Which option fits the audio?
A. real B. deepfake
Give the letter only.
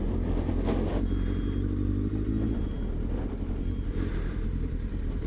A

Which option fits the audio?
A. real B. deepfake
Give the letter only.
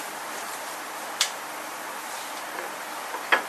B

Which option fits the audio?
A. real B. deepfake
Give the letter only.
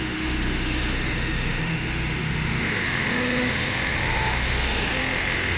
B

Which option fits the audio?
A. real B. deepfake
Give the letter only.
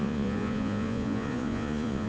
B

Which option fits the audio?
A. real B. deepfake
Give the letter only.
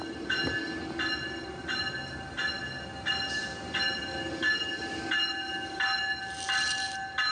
A